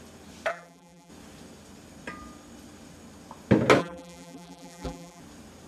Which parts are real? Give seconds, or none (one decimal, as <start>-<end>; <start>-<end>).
0.0-0.5; 1.1-3.8; 5.2-5.7